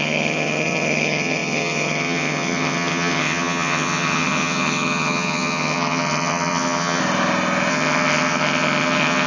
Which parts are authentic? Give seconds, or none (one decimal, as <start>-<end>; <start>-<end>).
7.0-7.7